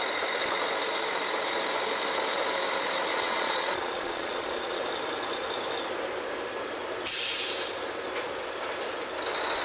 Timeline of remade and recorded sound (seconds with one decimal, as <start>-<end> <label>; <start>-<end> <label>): 0.0-3.1 recorded; 3.1-4.8 remade; 4.8-9.6 recorded